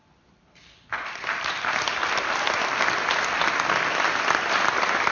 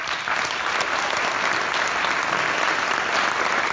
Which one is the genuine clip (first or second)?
second